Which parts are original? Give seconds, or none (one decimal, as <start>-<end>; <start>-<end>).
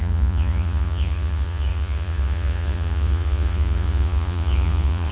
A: none